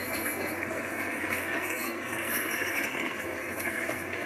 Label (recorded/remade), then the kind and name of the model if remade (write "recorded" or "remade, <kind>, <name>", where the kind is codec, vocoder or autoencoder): remade, codec, SNAC